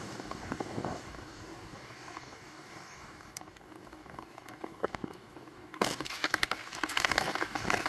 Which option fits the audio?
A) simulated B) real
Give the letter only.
A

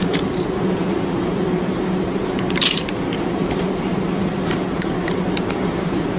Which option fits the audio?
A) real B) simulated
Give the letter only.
B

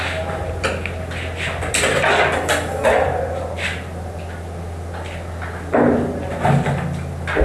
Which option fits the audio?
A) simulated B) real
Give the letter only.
B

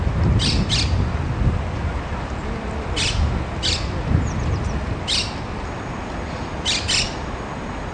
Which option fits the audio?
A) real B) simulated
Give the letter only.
A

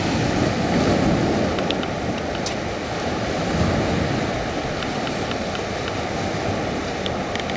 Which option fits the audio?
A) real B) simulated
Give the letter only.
A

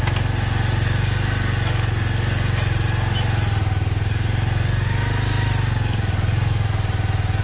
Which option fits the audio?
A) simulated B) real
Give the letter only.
B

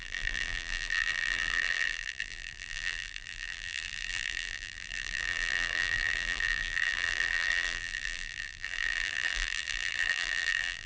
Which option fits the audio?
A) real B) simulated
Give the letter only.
B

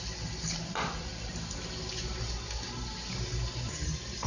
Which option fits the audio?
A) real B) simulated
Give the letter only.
A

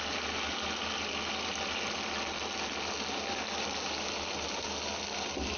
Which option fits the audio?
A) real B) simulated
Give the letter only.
A